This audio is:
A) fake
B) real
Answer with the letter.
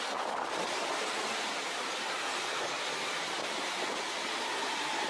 A